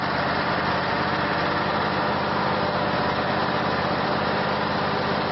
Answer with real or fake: real